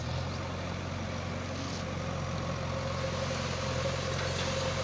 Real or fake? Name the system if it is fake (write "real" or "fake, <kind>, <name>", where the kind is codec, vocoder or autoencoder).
real